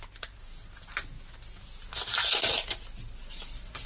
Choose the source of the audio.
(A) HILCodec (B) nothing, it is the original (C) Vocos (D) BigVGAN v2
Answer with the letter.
B